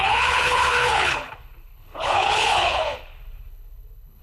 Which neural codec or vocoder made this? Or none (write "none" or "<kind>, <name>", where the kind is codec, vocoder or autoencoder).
codec, HILCodec